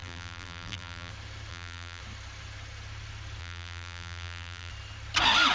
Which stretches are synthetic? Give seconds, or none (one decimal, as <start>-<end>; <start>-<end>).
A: 0.0-1.1; 1.5-2.0; 3.4-4.7